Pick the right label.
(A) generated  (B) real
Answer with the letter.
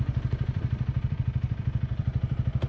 A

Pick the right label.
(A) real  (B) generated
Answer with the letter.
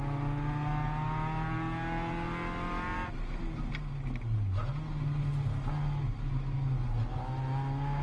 A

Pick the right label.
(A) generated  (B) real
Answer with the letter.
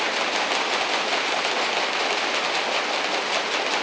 B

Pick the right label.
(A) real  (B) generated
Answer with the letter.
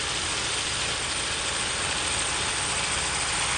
B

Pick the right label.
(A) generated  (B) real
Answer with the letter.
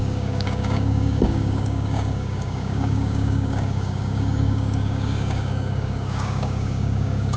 A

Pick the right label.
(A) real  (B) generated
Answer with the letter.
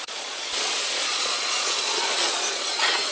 B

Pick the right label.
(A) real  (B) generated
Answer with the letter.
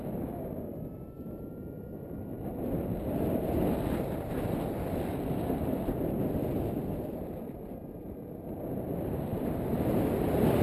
A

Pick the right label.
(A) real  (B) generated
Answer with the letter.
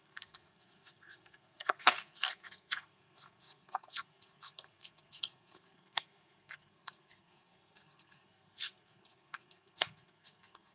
B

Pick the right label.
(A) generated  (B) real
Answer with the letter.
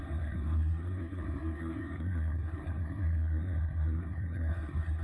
A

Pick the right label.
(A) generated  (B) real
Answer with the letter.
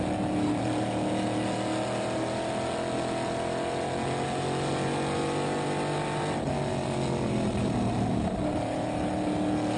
B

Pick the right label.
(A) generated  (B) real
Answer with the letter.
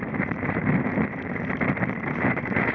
A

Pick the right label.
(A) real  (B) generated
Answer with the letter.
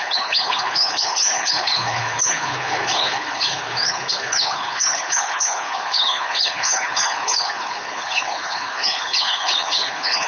B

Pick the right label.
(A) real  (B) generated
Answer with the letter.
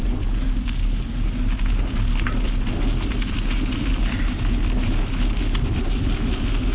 A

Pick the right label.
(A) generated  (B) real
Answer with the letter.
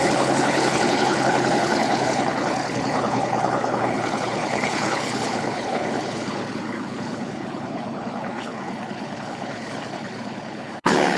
A